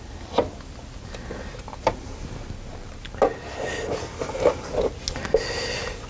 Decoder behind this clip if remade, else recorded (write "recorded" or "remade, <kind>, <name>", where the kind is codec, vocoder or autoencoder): recorded